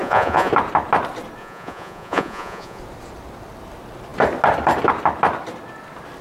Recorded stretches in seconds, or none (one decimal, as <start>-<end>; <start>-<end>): 0.5-1.4; 2.8-6.2